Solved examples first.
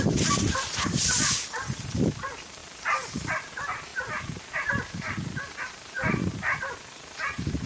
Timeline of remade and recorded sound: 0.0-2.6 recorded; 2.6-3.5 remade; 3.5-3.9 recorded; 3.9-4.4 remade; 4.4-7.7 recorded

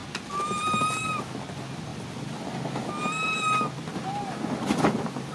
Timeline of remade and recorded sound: 0.0-5.3 recorded

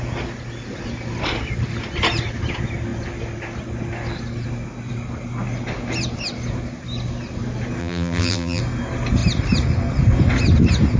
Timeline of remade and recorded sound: 0.0-7.8 recorded; 7.8-8.6 remade; 8.6-11.0 recorded

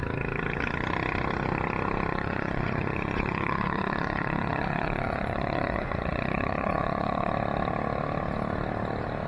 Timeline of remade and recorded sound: 0.0-2.1 recorded; 2.1-7.3 remade; 7.3-9.3 recorded

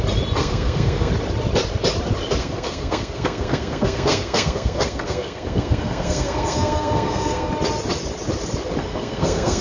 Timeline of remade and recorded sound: 0.0-0.4 recorded; 0.4-1.1 remade; 1.1-2.4 recorded; 2.4-7.5 remade; 7.5-8.8 recorded; 8.8-9.6 remade